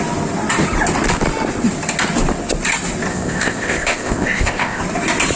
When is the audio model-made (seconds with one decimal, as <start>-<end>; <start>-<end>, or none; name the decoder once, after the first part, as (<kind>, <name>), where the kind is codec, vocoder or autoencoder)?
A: 3.1-4.8 (codec, ZipCodec)